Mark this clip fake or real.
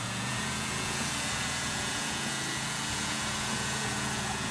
fake